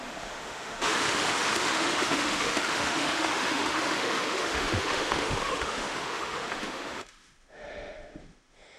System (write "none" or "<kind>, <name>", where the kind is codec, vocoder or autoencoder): autoencoder, DAC-VAE